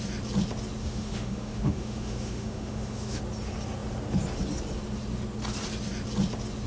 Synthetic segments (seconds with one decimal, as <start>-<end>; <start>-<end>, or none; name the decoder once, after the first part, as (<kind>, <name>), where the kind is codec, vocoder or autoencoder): 0.8-3.2 (autoencoder, DAC-VAE)